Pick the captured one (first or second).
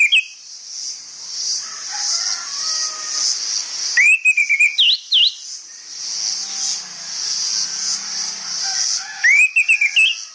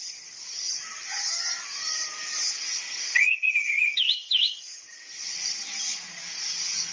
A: first